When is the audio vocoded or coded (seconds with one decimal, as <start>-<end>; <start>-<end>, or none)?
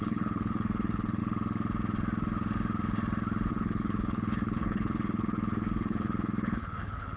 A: 0.0-1.2; 3.5-7.2